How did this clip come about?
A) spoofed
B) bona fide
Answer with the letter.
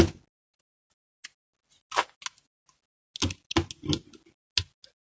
B